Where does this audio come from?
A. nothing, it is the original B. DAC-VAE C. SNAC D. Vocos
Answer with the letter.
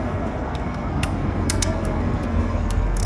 C